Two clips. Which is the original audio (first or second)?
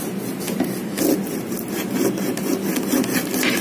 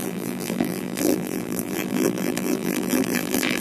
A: first